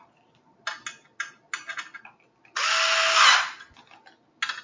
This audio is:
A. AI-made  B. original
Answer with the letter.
B